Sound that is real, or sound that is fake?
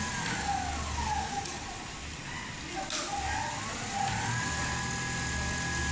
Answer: real